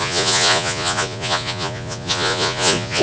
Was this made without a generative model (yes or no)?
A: no